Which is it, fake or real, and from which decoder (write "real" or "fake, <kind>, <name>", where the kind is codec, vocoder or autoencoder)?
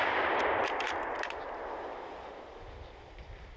real